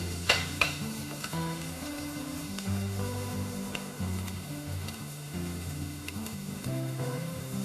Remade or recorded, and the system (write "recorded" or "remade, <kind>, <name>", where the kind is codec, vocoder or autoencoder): remade, autoencoder, DAC-VAE